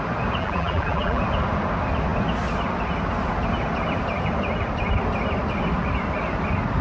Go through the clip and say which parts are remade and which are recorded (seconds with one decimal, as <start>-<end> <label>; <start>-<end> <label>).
0.0-0.4 recorded; 0.4-1.2 remade; 1.2-6.8 recorded